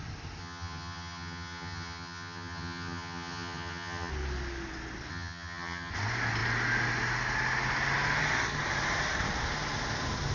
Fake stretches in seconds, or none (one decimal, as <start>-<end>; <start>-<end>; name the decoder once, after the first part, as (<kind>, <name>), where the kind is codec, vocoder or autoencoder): 0.4-4.1 (vocoder, HiFi-GAN); 5.1-5.9